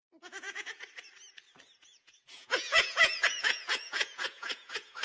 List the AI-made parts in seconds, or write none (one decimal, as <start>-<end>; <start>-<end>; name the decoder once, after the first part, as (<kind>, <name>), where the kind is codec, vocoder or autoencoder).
0.0-0.8 (vocoder, Vocos); 1.8-5.0